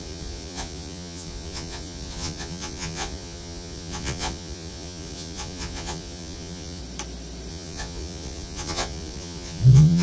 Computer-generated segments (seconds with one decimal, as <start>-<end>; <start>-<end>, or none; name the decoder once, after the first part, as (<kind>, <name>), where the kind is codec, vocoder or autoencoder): 0.0-6.8 (vocoder, Vocos); 7.5-10.0